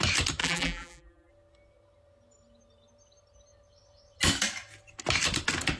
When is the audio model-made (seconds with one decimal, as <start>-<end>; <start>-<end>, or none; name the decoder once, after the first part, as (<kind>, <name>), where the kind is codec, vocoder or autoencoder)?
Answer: 0.4-1.3 (vocoder, BigVGAN v2)